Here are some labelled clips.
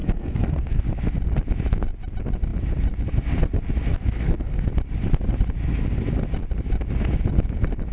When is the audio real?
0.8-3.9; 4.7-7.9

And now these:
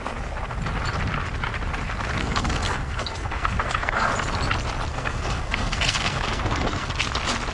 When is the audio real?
0.0-2.2; 4.1-4.9; 6.9-7.5

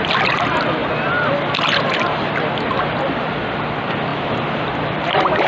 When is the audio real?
0.0-5.5

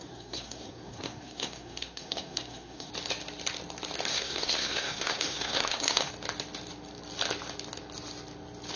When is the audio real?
2.9-4.1; 6.1-8.8

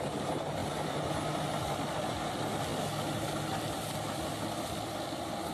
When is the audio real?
0.0-5.5

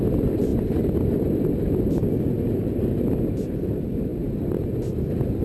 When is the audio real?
0.0-5.4